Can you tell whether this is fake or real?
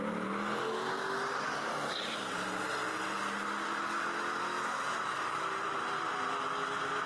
real